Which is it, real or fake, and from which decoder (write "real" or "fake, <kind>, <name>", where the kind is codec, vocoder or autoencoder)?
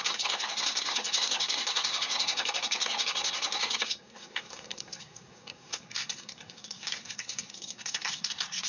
fake, codec, SNAC